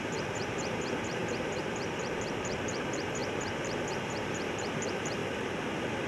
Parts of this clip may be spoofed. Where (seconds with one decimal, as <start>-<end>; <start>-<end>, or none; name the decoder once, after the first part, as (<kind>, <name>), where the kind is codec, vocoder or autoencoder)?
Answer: 0.0-5.2 (vocoder, BigVGAN v2)